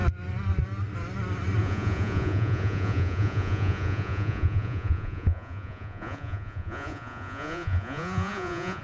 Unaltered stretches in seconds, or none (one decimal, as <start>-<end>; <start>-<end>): 0.0-1.6

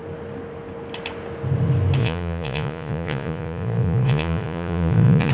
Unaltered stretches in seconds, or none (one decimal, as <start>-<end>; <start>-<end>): 0.0-2.0

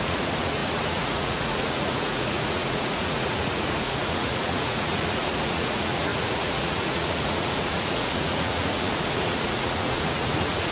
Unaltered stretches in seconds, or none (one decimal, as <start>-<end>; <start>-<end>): none

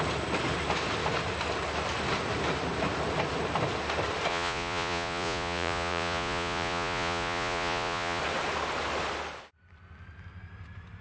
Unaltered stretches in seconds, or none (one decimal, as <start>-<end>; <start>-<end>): 0.0-4.3; 8.2-11.0

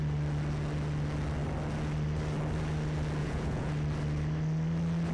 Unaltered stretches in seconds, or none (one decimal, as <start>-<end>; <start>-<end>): 0.0-3.2; 3.7-5.1

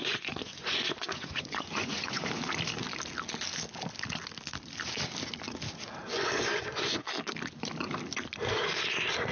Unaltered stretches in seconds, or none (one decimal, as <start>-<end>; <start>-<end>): 2.3-6.0; 7.1-9.3

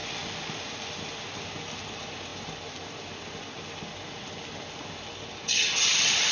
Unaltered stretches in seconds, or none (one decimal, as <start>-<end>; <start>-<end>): 0.0-6.3

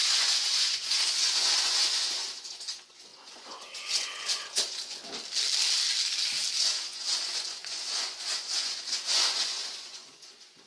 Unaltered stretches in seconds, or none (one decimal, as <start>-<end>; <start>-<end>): 5.0-6.6